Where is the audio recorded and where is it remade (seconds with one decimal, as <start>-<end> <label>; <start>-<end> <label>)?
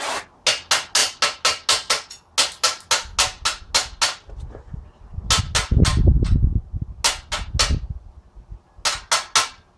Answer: 0.0-9.8 recorded